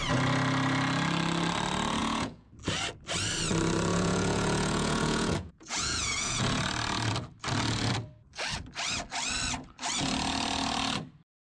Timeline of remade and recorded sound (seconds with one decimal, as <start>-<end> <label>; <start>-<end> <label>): 0.0-2.0 recorded; 2.0-2.5 remade; 2.5-3.9 recorded; 3.9-6.6 remade; 6.6-11.4 recorded